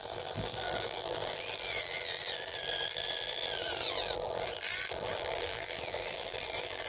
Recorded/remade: remade